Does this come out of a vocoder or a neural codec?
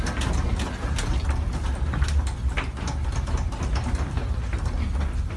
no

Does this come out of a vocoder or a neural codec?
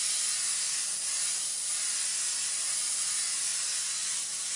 no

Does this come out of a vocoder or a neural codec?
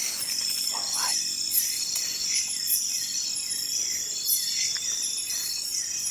no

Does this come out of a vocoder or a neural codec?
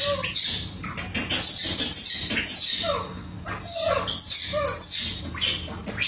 no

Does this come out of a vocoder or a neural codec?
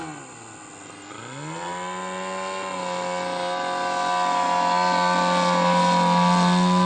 no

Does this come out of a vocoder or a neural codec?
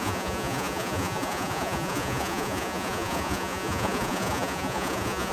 yes